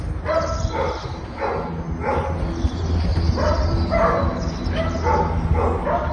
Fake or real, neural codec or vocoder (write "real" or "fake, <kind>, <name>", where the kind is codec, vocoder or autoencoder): real